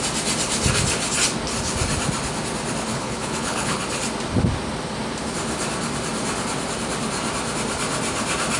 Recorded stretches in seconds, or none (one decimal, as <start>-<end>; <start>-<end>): 0.0-2.9; 3.8-8.6

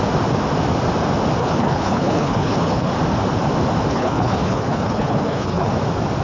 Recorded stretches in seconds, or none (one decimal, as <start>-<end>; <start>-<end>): 0.0-1.4; 2.9-3.9; 5.7-6.2

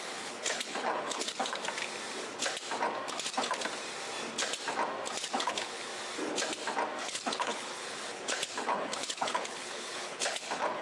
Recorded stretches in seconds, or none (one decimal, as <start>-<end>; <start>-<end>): 1.6-5.3; 5.9-7.0

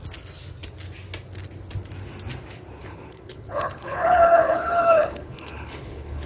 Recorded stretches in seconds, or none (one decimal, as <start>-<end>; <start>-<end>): 0.0-2.8

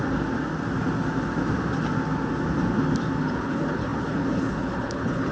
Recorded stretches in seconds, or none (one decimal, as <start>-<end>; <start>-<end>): 0.0-3.2

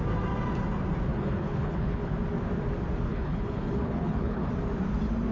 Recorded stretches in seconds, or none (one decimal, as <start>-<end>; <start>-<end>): 0.0-1.1; 2.1-3.1; 4.5-5.3